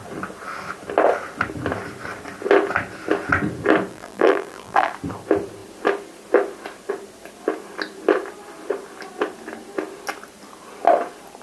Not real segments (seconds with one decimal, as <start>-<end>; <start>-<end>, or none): 3.9-4.9